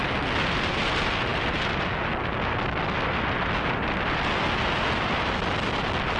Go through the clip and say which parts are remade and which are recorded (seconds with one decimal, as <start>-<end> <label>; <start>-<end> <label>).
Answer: 0.0-6.2 recorded